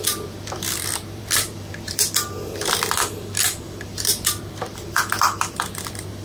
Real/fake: fake